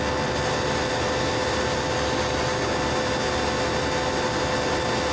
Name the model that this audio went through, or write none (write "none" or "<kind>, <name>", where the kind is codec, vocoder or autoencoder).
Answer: none